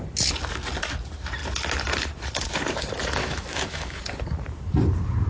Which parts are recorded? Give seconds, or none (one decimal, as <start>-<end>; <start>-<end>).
0.0-3.2; 4.0-5.3